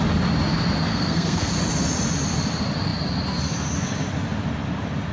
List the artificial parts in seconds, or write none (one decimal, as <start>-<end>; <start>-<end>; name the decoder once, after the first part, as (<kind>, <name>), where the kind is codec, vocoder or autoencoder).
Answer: 0.9-1.5 (codec, SNAC)